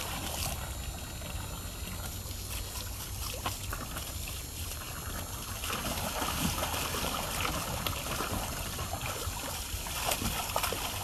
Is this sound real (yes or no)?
yes